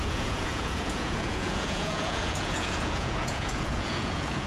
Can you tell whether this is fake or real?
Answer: fake